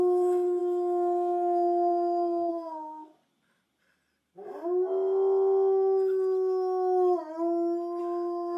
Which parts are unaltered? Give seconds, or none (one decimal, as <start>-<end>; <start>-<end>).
3.1-8.0